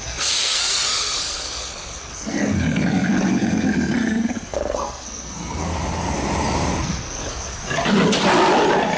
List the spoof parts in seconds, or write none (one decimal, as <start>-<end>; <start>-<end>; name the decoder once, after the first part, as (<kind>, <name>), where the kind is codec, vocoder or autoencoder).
0.0-5.7 (codec, SNAC); 6.8-7.6